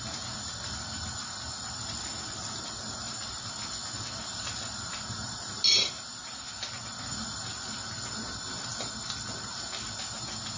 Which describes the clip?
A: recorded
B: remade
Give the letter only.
A